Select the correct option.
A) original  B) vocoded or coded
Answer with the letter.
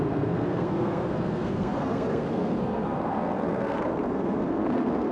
B